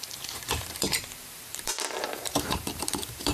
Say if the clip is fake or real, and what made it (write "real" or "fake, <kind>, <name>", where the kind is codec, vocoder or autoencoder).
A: fake, vocoder, BigVGAN v2